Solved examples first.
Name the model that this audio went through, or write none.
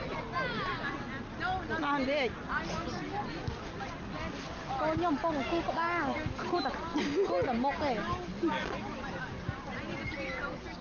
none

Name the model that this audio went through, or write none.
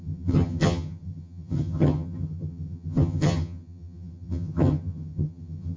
vocoder, HiFi-GAN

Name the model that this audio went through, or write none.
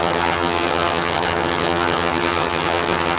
vocoder, HiFi-GAN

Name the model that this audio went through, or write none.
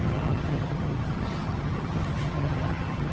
vocoder, HiFi-GAN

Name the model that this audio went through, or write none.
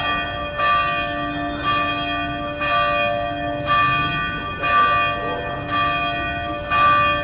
none